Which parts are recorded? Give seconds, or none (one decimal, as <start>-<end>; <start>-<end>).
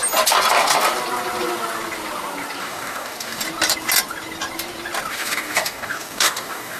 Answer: 0.0-2.6; 3.4-5.1